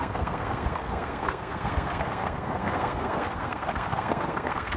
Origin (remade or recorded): remade